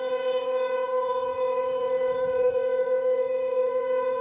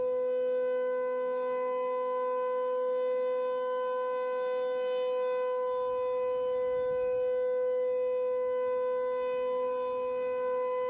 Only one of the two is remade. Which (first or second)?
first